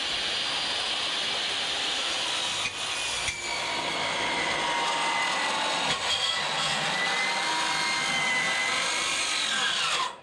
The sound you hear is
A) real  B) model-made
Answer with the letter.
A